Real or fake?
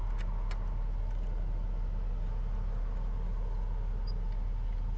real